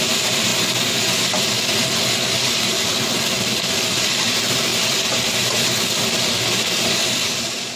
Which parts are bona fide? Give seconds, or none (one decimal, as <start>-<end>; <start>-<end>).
0.0-7.8

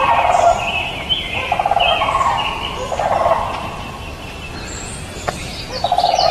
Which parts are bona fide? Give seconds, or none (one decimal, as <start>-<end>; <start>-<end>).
0.0-1.4; 5.0-6.3

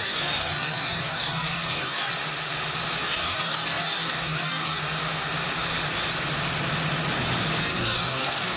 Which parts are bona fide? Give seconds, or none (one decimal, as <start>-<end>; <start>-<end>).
2.1-3.0; 4.8-7.6

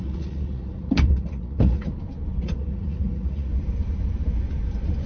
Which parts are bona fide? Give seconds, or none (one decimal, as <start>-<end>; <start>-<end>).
1.9-2.4; 3.5-5.1

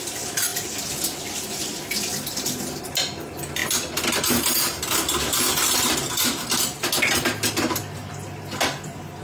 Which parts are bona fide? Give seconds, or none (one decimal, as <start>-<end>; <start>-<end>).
0.0-9.2

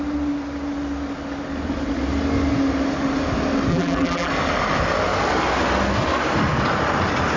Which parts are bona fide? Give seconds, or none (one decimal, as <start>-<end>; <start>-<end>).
0.0-3.7; 4.3-7.4

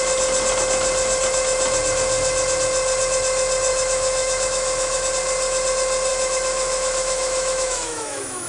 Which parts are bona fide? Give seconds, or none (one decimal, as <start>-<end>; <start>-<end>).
0.0-3.7; 5.1-6.1